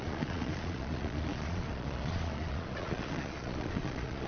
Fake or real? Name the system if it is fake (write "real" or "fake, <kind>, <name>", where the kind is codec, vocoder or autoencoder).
fake, vocoder, Vocos